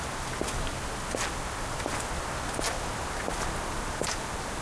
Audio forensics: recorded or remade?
recorded